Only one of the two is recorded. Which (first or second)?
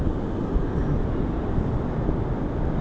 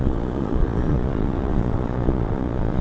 first